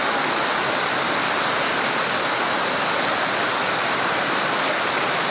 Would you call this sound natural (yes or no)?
yes